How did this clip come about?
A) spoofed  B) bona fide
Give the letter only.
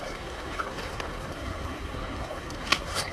A